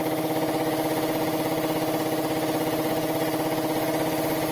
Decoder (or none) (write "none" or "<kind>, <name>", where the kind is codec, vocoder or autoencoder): none